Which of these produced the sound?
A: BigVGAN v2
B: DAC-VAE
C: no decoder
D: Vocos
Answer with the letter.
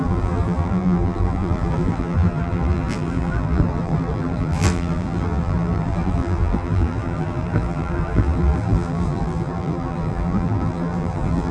A